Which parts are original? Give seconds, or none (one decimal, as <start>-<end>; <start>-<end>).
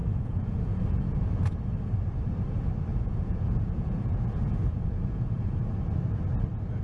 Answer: 0.8-2.9; 5.7-6.8